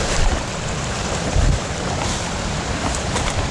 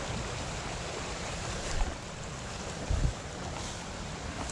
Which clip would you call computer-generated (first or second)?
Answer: first